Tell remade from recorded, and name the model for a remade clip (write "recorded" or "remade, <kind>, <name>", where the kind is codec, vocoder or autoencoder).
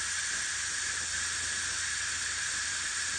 recorded